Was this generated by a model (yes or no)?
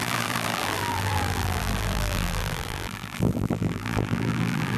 yes